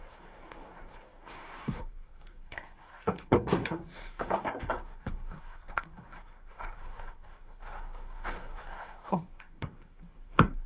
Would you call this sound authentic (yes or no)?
no